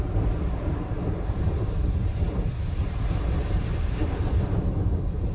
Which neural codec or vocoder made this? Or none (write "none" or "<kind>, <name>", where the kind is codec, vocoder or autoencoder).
vocoder, BigVGAN v2